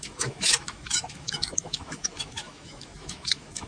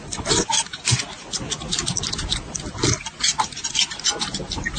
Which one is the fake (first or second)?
first